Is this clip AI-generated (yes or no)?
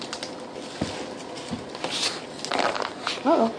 no